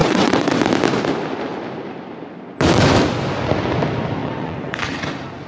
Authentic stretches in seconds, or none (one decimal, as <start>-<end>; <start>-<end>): 0.6-4.2; 4.8-5.5